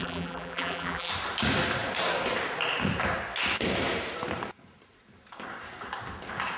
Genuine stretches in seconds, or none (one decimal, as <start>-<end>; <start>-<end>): 1.1-6.6